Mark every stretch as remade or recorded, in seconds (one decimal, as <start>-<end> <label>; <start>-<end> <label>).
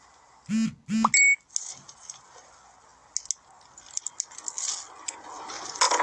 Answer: 0.0-6.0 recorded